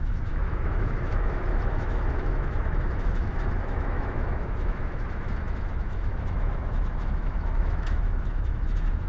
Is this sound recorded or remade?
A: remade